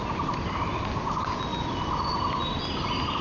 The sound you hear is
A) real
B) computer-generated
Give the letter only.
A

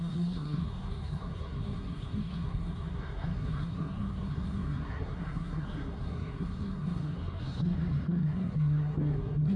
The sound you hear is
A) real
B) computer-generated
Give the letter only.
B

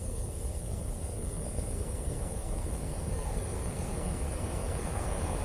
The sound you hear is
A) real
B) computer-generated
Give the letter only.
B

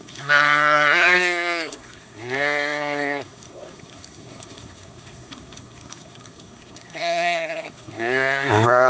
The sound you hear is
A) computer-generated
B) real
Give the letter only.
A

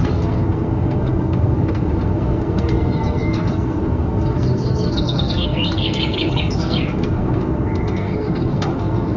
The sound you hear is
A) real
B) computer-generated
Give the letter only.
B